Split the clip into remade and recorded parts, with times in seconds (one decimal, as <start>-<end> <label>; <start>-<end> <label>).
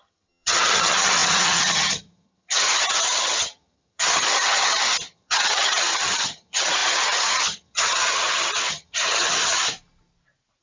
0.0-9.6 remade; 9.6-10.6 recorded